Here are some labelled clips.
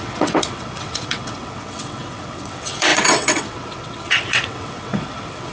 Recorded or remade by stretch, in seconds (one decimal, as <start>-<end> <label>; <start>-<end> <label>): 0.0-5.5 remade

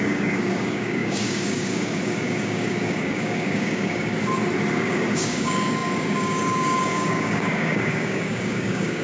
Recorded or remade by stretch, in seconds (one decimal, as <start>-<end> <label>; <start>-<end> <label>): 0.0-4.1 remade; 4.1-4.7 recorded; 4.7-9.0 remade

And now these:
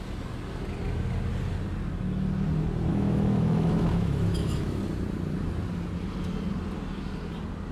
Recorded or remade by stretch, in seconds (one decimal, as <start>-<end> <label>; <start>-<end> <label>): 0.0-2.9 recorded; 2.9-4.8 remade; 4.8-7.7 recorded